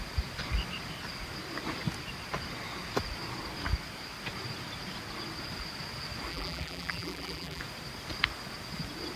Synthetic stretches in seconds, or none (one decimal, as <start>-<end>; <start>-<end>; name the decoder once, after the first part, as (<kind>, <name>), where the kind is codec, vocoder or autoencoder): 6.3-7.6 (vocoder, BigVGAN v2)